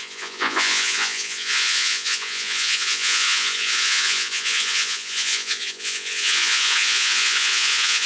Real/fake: fake